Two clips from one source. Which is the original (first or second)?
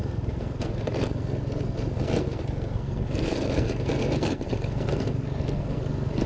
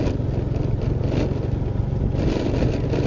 second